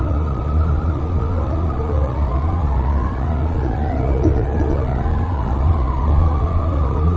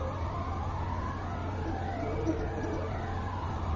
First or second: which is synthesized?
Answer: first